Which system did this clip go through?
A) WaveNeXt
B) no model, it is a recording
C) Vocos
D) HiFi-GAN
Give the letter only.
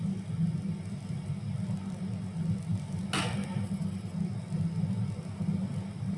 B